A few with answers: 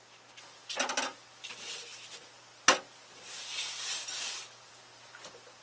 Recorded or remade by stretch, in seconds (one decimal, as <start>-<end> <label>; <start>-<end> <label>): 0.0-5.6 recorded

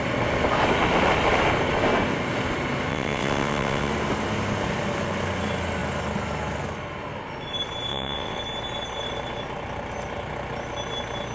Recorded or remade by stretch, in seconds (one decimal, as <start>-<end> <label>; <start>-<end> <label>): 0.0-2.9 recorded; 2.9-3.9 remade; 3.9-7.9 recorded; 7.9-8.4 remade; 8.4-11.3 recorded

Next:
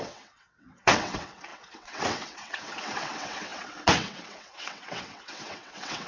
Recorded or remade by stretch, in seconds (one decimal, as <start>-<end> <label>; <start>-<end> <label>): 0.0-6.1 remade